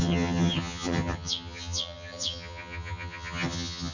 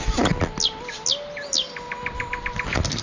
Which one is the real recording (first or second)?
second